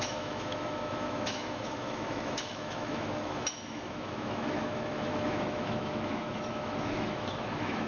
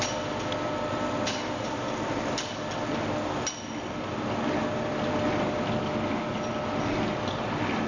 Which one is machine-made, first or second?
first